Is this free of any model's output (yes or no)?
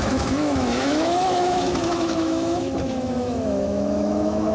no